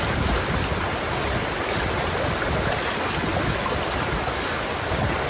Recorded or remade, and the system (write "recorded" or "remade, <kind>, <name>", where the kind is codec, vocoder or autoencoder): recorded